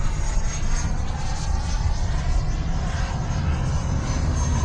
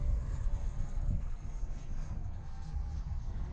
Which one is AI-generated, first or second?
second